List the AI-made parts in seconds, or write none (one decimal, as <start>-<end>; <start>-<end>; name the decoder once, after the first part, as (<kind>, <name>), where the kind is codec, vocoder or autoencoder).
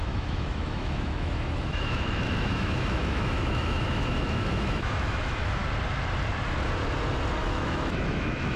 0.0-5.6 (autoencoder, DAC-VAE); 7.4-8.6